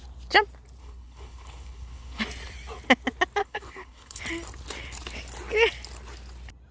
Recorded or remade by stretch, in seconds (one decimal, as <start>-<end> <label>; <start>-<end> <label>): 0.0-0.8 recorded; 0.8-2.2 remade; 2.2-3.4 recorded; 3.4-4.2 remade; 4.2-6.7 recorded